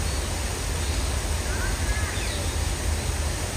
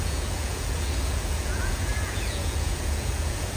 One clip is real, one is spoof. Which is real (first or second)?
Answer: first